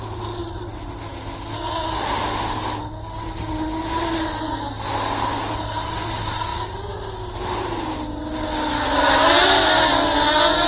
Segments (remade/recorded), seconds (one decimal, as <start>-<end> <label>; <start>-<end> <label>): 0.0-10.7 recorded

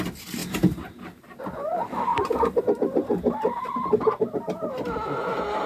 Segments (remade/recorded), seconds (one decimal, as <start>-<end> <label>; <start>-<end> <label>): 0.0-0.4 recorded; 0.4-1.4 remade; 1.4-2.1 recorded; 2.1-2.6 remade; 2.6-5.7 recorded